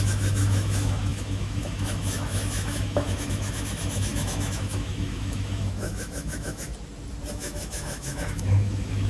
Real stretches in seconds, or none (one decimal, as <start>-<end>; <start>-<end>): 6.7-7.3